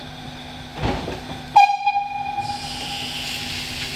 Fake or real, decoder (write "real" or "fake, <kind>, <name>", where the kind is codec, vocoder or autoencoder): real